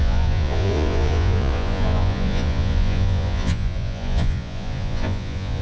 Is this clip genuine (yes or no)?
no